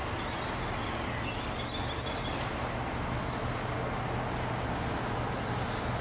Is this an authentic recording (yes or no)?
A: yes